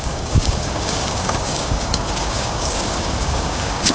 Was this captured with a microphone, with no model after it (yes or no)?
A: no